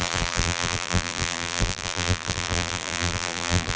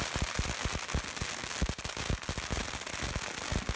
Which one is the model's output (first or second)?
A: first